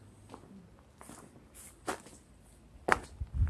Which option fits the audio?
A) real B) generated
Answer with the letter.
A